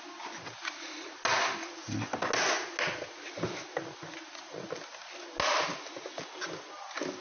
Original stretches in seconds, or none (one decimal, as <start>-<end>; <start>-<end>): 0.0-7.2